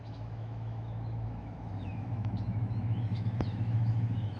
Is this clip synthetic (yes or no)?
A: yes